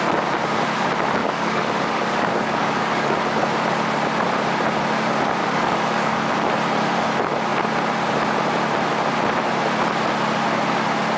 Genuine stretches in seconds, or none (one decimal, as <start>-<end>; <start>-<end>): 0.0-1.2; 3.4-5.4; 6.3-11.2